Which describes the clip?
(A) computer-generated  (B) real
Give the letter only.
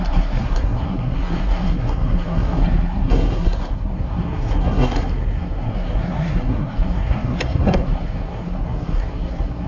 A